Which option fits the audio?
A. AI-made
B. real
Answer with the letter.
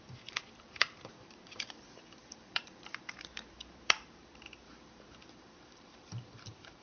A